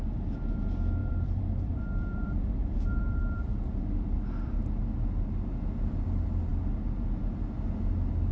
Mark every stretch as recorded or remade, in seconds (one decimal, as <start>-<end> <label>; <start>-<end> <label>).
0.0-1.0 recorded; 1.0-3.5 remade; 3.5-8.3 recorded